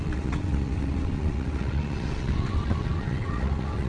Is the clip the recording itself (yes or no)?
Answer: no